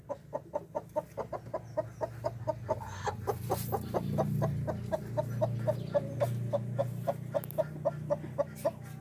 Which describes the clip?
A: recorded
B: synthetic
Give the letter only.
A